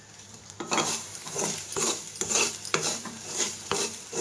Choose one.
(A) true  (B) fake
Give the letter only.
B